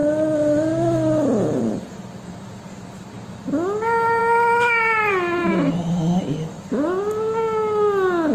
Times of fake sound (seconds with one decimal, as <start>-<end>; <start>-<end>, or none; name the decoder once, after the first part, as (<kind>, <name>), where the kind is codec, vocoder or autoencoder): none